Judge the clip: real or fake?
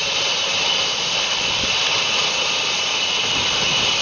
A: real